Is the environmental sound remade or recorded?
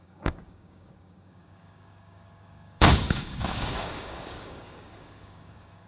remade